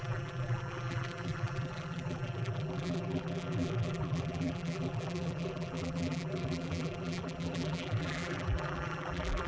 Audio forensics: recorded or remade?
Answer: remade